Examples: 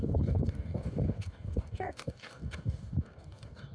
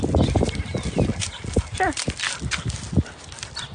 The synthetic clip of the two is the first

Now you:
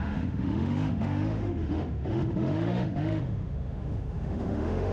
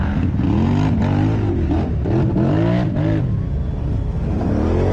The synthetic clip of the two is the first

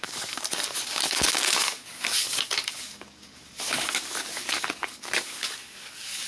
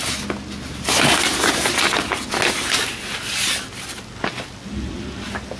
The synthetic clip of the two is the first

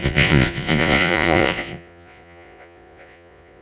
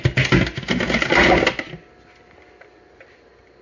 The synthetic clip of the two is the first